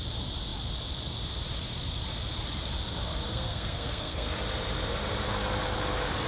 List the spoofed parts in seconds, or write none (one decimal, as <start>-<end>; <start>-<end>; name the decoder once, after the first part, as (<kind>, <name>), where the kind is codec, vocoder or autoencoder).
3.3-4.3 (codec, SNAC)